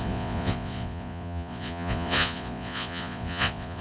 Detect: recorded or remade remade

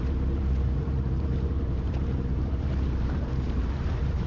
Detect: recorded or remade remade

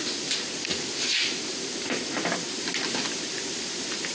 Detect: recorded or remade recorded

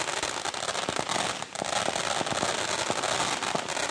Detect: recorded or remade recorded